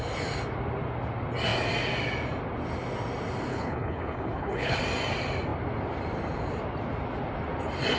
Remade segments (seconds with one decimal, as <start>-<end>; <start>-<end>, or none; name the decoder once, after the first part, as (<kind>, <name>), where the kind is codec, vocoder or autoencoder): 3.5-4.8 (codec, HILCodec)